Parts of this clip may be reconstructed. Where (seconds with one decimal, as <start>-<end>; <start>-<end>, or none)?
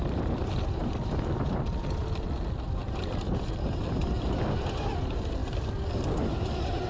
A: none